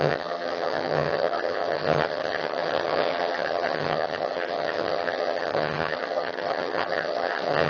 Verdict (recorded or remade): remade